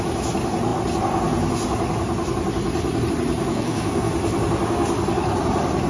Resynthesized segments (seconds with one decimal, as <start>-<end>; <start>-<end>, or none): 3.5-4.1